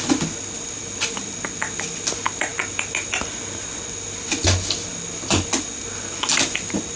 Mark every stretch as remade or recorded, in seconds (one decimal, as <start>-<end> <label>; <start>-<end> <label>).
0.0-7.0 recorded